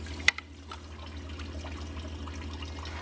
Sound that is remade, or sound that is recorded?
recorded